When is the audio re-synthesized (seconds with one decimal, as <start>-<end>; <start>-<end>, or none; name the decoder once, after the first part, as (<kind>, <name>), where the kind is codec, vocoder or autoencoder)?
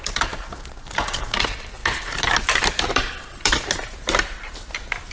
1.8-5.1 (vocoder, BigVGAN v2)